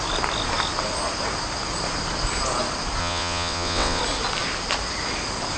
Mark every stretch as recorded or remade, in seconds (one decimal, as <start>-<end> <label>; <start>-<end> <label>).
0.0-3.0 recorded; 3.0-4.0 remade; 4.0-5.6 recorded